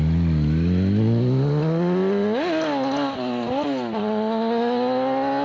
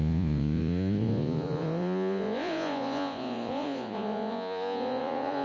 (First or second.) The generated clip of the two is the second